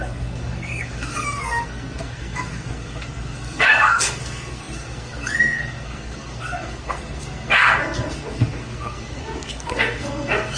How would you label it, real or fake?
fake